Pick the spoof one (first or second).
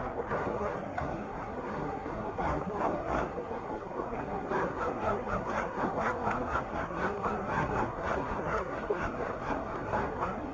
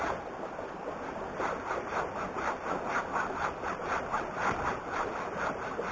first